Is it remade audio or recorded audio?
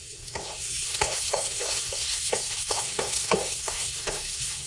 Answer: remade